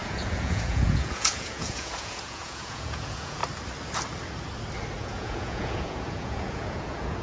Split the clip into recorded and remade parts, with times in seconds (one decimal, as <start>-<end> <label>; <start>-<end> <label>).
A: 0.0-3.4 remade; 3.4-5.0 recorded; 5.0-7.2 remade